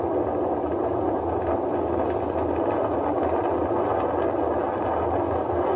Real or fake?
real